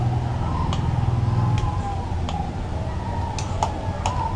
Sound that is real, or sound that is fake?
real